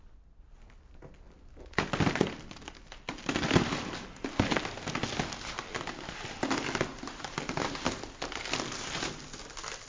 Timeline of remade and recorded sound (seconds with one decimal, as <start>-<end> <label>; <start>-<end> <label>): 0.0-9.9 recorded